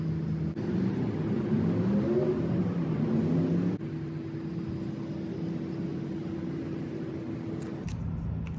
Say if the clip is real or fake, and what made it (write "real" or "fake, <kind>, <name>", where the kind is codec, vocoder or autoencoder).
real